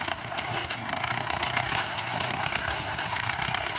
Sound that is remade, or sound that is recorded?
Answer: remade